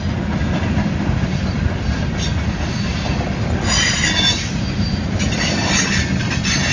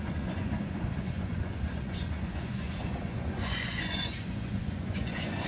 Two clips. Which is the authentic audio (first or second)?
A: first